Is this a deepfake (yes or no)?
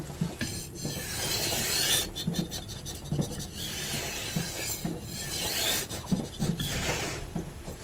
no